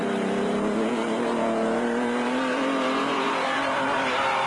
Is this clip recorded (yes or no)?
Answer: no